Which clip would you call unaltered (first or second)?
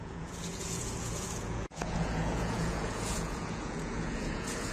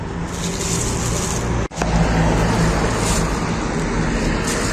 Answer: second